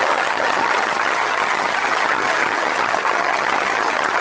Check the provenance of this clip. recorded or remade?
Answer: remade